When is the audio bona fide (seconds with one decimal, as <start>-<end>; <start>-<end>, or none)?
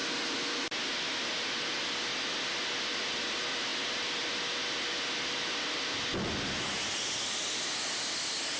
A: 0.0-8.6